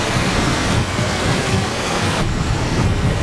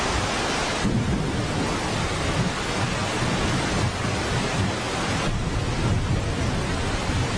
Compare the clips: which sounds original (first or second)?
second